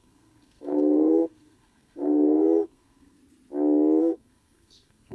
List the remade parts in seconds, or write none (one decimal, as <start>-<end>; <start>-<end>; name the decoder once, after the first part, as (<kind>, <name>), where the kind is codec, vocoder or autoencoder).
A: 0.0-3.2 (codec, SNAC); 4.0-5.1